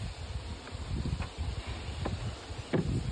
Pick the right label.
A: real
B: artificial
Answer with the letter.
A